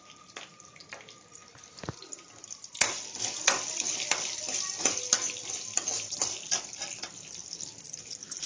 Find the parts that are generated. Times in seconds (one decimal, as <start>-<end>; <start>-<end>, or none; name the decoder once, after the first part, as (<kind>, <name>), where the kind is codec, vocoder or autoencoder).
0.0-1.4 (vocoder, BigVGAN v2); 6.5-7.4; 8.0-8.5